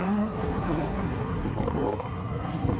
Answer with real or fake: fake